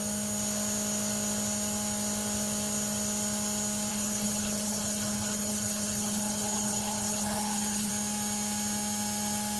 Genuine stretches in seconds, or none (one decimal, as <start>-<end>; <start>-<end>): 0.0-3.9; 7.9-9.6